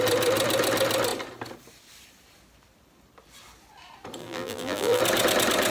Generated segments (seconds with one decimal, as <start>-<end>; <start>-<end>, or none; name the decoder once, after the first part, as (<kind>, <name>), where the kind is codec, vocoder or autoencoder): 4.2-5.0 (vocoder, BigVGAN v2)